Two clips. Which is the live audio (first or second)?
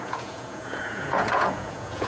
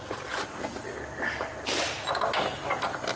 second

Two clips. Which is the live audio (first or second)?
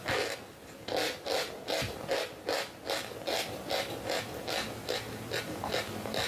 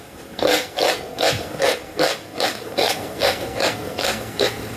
first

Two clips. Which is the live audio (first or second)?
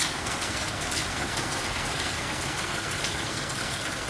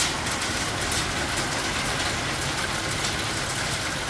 second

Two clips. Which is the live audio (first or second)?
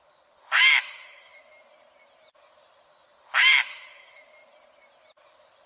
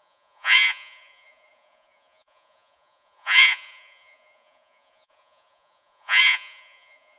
first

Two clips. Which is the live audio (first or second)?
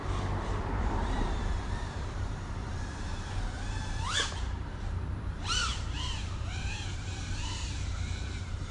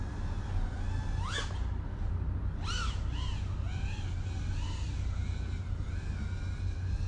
second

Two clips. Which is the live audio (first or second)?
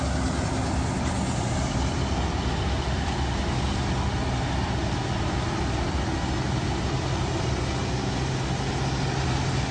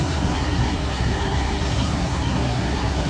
first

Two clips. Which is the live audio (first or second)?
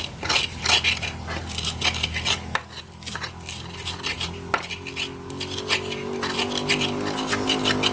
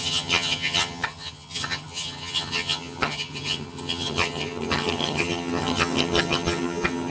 first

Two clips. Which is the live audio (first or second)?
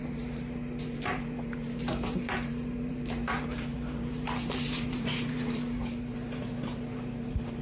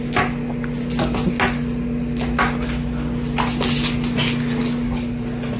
second